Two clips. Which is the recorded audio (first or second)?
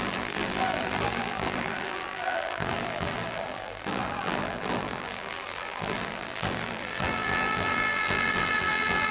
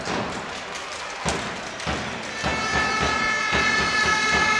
second